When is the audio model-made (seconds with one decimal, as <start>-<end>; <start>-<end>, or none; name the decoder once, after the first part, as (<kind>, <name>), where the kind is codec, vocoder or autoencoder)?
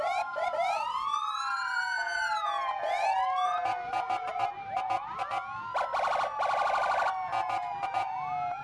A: none